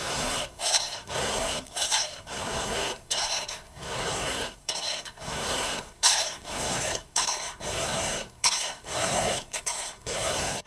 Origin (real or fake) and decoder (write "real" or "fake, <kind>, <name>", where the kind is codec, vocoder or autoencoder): fake, codec, SNAC